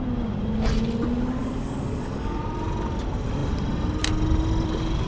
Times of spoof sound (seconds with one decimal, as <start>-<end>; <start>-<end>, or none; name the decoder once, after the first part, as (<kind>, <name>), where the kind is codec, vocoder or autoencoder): 1.4-2.4 (codec, DAC)